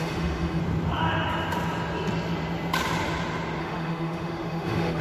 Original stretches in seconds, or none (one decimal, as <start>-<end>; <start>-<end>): 0.6-3.6